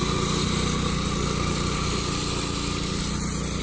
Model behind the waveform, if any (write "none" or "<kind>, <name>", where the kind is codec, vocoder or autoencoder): none